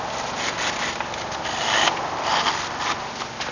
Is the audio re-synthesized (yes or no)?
no